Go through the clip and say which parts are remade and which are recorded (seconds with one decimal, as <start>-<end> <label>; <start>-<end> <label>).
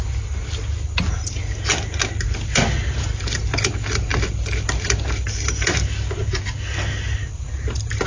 0.0-8.1 recorded